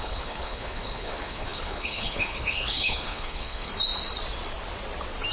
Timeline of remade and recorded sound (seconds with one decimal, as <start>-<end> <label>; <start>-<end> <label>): 0.0-3.7 remade; 3.7-5.3 recorded